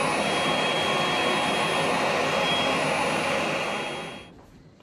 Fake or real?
real